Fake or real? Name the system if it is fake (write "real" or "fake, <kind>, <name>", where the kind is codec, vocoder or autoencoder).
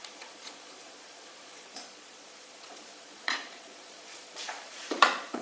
fake, vocoder, Vocos